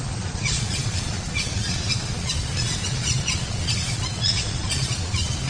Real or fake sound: fake